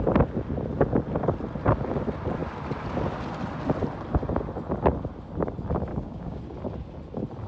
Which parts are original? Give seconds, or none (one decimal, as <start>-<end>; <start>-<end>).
0.0-5.9; 6.4-7.5

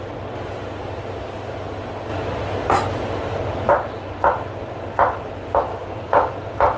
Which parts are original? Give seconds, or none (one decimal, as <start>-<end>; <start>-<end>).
0.0-5.7; 6.3-6.8

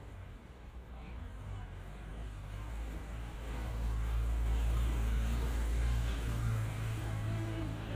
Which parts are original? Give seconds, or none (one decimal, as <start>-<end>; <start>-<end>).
none

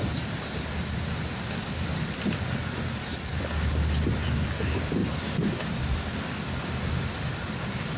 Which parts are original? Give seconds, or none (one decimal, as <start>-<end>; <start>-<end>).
0.0-8.0

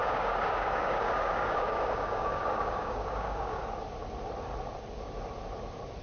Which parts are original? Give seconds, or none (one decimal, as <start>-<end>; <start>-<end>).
3.6-6.0

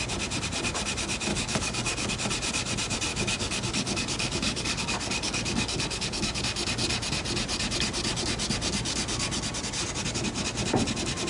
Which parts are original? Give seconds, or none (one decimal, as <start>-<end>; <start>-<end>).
0.0-1.3; 2.1-3.1; 6.4-11.3

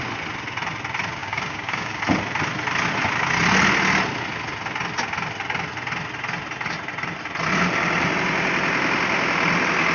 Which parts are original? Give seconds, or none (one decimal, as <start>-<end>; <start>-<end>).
0.0-1.2; 2.0-9.9

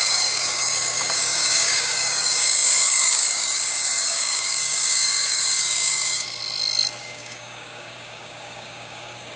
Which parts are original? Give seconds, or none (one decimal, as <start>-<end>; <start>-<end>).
6.4-7.0